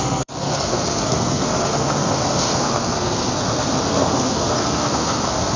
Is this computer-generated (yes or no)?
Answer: yes